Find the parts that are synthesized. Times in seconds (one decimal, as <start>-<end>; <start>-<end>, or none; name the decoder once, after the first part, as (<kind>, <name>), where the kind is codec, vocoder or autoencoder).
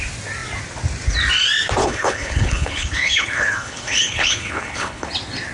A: 1.8-5.1 (codec, HILCodec)